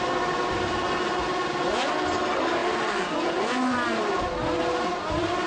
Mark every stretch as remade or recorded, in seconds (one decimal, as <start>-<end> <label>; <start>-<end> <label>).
0.0-5.5 recorded